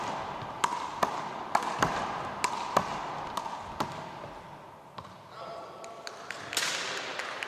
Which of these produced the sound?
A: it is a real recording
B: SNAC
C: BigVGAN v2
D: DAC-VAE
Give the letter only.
A